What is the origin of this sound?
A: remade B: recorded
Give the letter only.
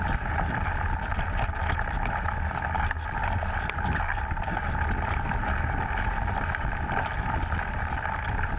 B